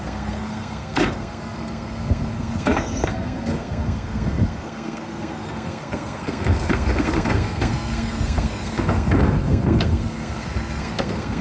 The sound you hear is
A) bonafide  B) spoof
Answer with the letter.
B